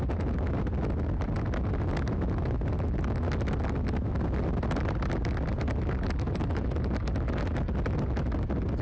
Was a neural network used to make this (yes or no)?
no